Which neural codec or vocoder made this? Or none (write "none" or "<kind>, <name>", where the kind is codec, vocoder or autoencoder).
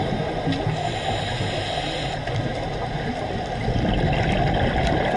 none